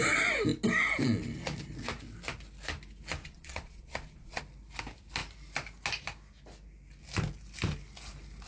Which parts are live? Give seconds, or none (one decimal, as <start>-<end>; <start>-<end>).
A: 0.0-3.2; 4.4-8.5